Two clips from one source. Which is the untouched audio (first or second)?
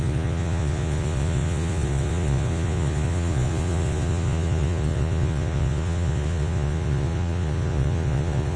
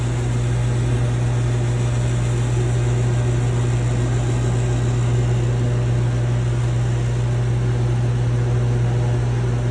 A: second